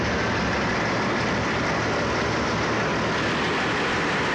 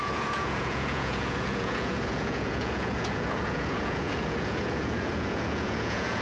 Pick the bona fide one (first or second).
first